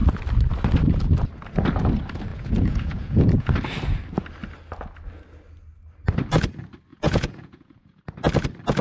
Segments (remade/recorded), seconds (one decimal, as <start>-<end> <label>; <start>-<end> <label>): 0.0-2.3 recorded; 2.3-3.5 remade; 3.5-6.9 recorded; 6.9-8.0 remade; 8.0-8.8 recorded

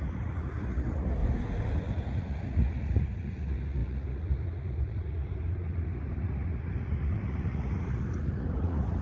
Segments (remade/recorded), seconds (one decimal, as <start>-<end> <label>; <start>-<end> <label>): 0.0-1.2 remade; 1.2-1.8 recorded; 1.8-9.0 remade

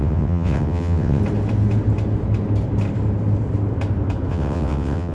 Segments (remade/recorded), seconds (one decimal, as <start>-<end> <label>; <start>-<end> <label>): 0.0-1.2 remade; 1.2-4.3 recorded; 4.3-5.1 remade

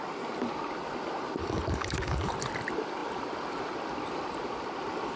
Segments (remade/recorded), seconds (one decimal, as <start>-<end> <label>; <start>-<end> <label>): 0.0-1.4 recorded; 1.4-2.3 remade; 2.3-5.2 recorded

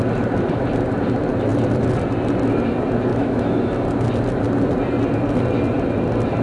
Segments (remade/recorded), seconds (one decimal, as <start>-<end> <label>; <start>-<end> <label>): 0.0-3.1 recorded; 3.1-3.7 remade; 3.7-6.4 recorded